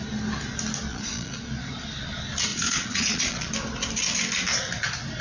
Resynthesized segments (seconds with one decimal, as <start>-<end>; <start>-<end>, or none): 0.9-1.4; 2.5-3.5